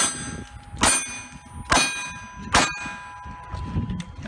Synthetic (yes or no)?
no